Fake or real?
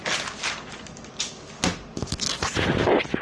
real